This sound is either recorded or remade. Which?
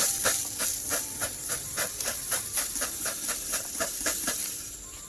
remade